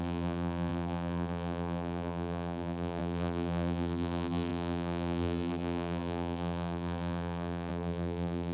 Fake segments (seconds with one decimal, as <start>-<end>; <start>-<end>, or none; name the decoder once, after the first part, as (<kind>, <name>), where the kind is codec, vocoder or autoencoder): 0.0-8.5 (vocoder, BigVGAN v2)